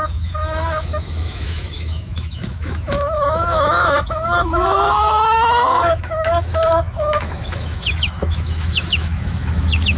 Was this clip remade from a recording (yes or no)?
yes